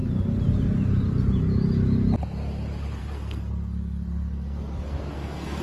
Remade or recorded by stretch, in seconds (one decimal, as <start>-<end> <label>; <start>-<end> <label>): 0.0-3.0 recorded; 3.0-5.6 remade